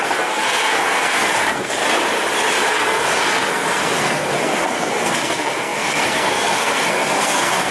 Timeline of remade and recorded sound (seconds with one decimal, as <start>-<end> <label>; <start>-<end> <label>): 0.0-1.8 remade; 1.8-2.7 recorded; 2.7-7.7 remade